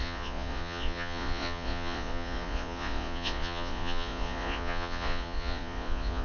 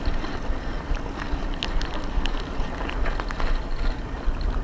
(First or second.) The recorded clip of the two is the second